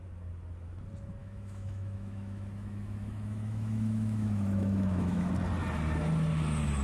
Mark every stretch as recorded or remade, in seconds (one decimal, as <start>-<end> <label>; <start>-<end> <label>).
0.0-1.2 recorded; 1.2-5.3 remade; 5.3-6.8 recorded